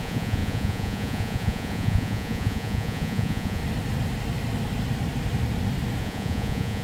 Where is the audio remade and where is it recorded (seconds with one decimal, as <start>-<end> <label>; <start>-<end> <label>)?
0.0-3.6 remade; 3.6-6.0 recorded; 6.0-6.8 remade